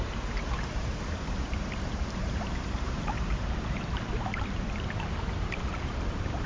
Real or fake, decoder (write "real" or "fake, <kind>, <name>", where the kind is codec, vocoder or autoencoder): fake, vocoder, BigVGAN v2